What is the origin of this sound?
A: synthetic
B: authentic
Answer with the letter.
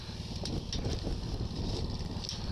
B